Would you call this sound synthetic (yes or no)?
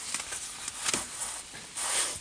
no